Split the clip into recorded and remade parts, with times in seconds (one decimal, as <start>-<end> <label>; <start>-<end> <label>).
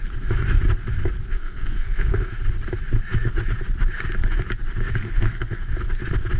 0.0-1.3 recorded; 1.3-2.3 remade; 2.3-5.0 recorded; 5.0-5.6 remade; 5.6-6.4 recorded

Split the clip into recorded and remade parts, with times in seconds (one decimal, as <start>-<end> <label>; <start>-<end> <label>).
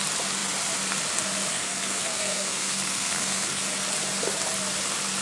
0.0-1.5 recorded; 1.5-3.6 remade; 3.6-5.2 recorded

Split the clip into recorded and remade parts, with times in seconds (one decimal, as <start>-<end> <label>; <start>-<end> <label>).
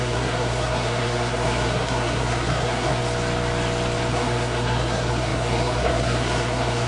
0.0-3.0 remade; 3.0-4.1 recorded; 4.1-6.9 remade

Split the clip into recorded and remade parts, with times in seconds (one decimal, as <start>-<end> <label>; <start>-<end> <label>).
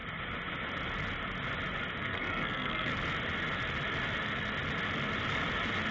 0.0-2.0 recorded; 2.0-2.9 remade; 2.9-5.9 recorded